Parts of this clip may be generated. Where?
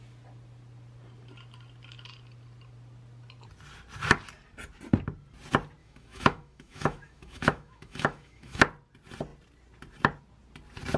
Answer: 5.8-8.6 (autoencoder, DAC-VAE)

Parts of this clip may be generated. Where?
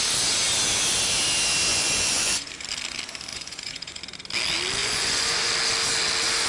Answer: 1.7-2.5 (vocoder, Vocos); 3.3-4.0; 4.8-5.5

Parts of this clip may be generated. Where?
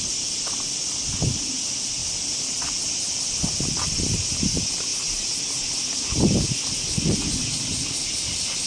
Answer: none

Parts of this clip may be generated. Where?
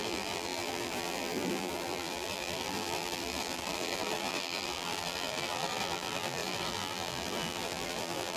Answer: 0.0-8.4 (vocoder, BigVGAN v2)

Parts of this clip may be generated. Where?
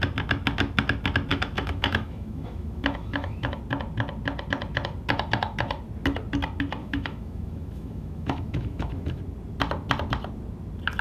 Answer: 1.3-3.6 (autoencoder, DAC-VAE); 6.8-9.2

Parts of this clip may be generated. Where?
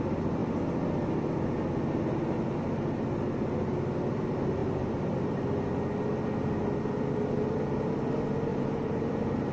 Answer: 4.6-5.4 (vocoder, BigVGAN v2); 8.5-9.5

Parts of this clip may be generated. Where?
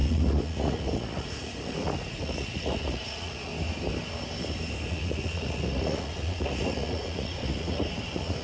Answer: 0.0-3.5 (vocoder, Vocos); 4.9-8.4